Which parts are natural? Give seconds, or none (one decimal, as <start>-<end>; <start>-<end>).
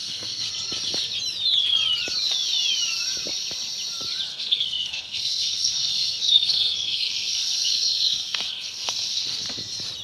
0.5-4.3; 9.5-10.0